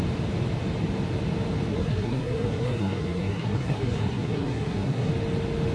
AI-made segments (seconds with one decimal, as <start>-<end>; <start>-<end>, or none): 1.7-5.1